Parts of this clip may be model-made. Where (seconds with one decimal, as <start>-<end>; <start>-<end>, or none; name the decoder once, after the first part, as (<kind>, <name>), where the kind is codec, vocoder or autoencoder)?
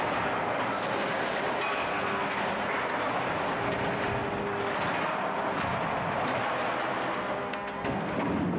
1.9-2.4 (codec, SNAC); 7.4-8.1